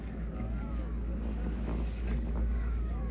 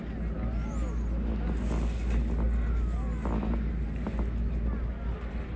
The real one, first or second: second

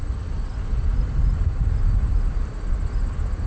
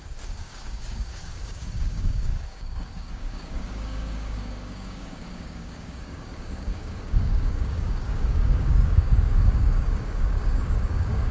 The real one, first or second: first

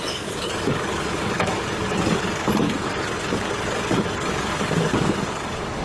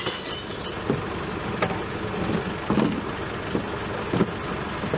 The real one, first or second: second